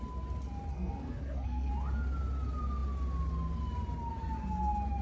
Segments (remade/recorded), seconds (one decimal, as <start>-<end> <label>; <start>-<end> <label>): 0.0-0.7 recorded; 0.7-1.7 remade; 1.7-5.0 recorded

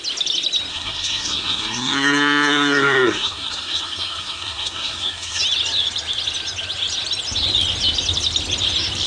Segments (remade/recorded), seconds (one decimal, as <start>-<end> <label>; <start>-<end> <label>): 0.0-0.7 recorded; 0.7-5.4 remade; 5.4-9.1 recorded

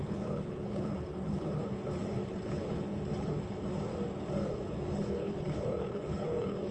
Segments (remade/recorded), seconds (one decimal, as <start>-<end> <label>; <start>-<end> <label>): 0.0-3.9 remade; 3.9-4.5 recorded; 4.5-6.7 remade